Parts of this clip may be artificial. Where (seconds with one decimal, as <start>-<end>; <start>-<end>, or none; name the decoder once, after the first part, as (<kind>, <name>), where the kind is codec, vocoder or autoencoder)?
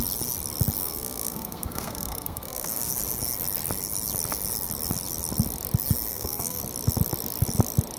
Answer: 0.8-2.9 (codec, SNAC); 6.1-6.6